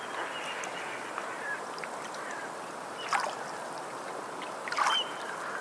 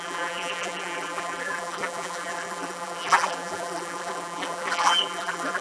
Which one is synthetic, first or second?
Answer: second